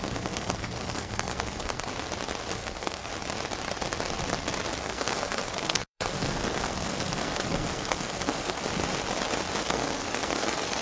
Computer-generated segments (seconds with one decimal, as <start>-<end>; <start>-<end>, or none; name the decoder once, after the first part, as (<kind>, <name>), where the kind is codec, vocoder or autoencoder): 0.0-1.9 (codec, SNAC); 2.5-3.1; 4.8-8.6; 9.6-10.8